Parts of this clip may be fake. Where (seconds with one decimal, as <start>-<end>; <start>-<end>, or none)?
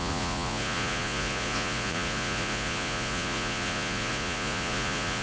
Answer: 0.0-5.2